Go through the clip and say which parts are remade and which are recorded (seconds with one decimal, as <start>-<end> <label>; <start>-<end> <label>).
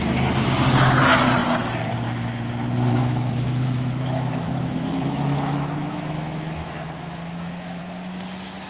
0.0-3.0 recorded; 3.0-7.8 remade; 7.8-8.7 recorded